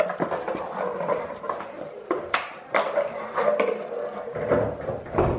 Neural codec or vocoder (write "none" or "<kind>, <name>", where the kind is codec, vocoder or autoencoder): none